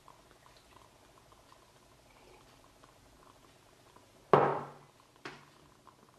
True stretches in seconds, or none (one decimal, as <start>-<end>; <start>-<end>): 0.0-6.2